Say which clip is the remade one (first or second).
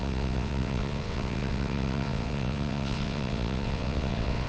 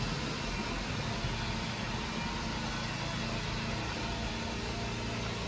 first